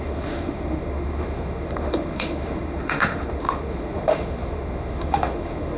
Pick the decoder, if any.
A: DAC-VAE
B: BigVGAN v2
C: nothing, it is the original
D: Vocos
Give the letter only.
A